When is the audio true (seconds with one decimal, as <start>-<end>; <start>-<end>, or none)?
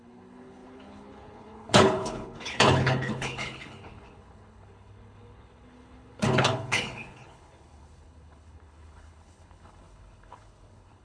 none